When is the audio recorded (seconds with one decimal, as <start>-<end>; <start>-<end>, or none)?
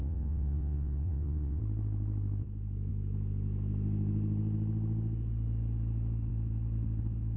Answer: 1.6-7.4